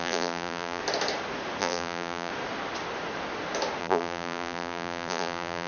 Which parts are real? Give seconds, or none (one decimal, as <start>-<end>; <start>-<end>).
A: 0.8-1.6; 2.3-3.8

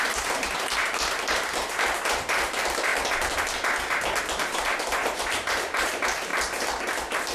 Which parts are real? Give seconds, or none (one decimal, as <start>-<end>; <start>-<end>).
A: 0.8-2.1; 2.9-4.2; 6.3-7.3